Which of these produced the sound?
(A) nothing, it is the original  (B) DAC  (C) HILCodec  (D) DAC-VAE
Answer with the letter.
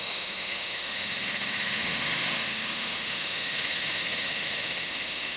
D